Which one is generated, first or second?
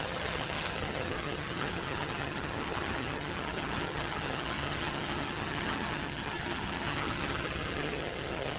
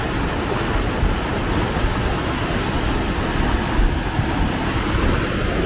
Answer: first